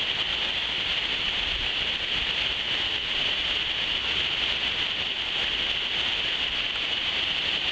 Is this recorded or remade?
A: recorded